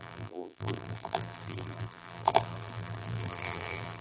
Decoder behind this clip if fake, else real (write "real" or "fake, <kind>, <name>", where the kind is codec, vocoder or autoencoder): fake, vocoder, BigVGAN v2